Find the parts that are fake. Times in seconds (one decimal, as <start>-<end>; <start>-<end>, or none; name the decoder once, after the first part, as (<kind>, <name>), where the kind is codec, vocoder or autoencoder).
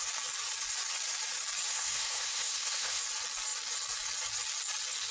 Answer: 1.7-3.0 (codec, SNAC)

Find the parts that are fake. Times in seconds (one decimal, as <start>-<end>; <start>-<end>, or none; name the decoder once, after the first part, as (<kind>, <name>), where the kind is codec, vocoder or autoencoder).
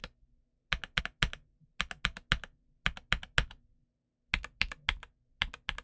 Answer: none